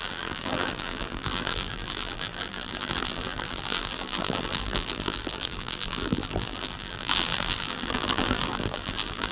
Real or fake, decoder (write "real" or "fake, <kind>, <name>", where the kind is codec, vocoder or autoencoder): fake, vocoder, BigVGAN v2